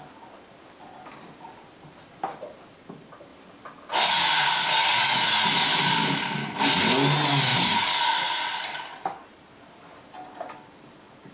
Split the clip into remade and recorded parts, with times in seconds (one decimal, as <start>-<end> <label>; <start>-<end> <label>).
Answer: 0.0-7.5 recorded; 7.5-8.1 remade; 8.1-11.3 recorded